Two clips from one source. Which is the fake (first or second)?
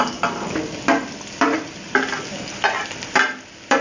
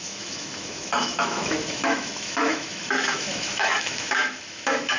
second